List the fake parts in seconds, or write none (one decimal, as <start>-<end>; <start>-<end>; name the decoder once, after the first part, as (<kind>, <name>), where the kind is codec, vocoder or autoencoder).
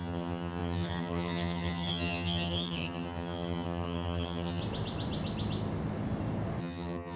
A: 0.0-4.6 (vocoder, HiFi-GAN); 6.6-7.2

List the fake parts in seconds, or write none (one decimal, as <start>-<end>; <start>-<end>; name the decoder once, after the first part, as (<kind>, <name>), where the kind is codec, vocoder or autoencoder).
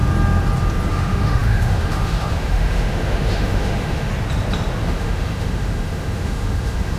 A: 0.9-4.1 (autoencoder, DAC-VAE); 4.8-7.0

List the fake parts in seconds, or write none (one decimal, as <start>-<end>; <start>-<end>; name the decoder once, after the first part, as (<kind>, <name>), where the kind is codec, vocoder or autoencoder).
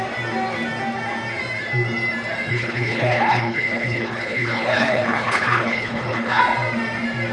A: 2.5-6.4 (codec, HILCodec)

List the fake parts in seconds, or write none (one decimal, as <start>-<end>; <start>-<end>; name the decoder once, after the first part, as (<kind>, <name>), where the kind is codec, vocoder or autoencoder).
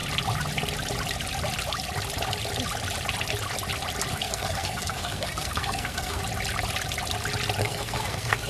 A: 4.1-6.2 (codec, SNAC); 7.6-8.5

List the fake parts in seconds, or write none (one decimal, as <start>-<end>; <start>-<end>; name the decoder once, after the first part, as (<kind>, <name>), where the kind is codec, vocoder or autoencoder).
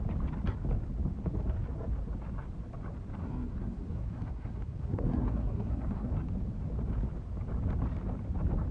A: 3.2-6.1 (codec, SNAC)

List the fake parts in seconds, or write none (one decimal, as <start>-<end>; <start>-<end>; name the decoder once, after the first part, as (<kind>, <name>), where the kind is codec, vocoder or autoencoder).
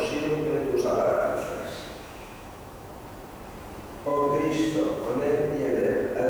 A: 1.2-2.9 (autoencoder, DAC-VAE); 4.1-5.4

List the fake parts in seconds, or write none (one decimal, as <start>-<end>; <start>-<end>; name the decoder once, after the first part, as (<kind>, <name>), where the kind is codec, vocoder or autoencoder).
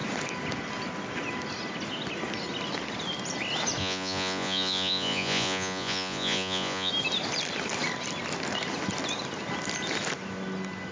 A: 3.8-6.9 (vocoder, Vocos)